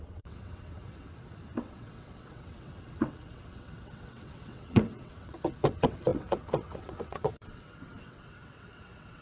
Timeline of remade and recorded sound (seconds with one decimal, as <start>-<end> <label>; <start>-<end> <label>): 0.0-1.1 remade; 1.1-1.6 recorded; 1.6-9.2 remade